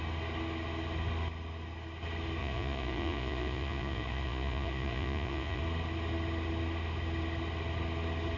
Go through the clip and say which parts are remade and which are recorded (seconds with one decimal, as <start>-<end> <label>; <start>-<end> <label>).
0.0-2.4 recorded; 2.4-5.6 remade; 5.6-8.4 recorded